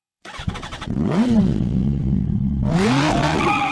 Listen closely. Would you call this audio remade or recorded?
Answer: remade